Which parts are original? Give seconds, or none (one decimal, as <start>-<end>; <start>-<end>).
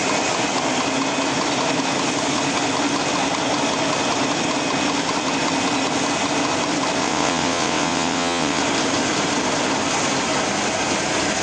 0.0-7.0; 8.6-11.4